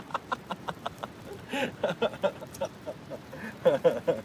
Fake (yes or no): yes